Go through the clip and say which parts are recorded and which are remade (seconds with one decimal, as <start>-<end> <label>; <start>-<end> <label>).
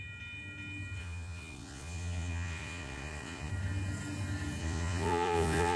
0.0-1.0 recorded; 1.0-3.5 remade; 3.5-4.6 recorded; 4.6-5.8 remade